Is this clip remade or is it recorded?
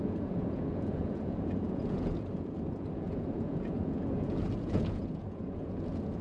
remade